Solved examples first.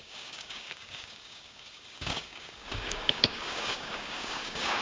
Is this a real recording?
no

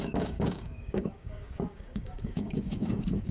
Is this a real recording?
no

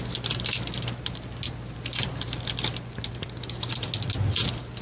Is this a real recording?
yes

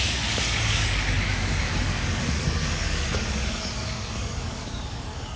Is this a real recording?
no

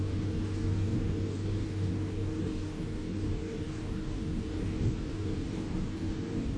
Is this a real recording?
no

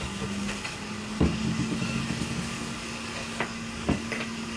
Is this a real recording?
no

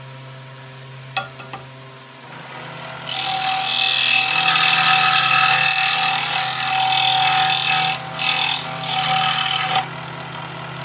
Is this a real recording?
yes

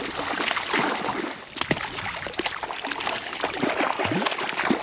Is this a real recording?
yes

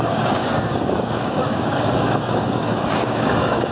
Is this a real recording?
no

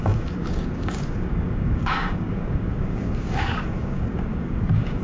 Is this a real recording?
no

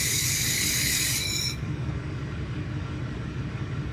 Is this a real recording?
no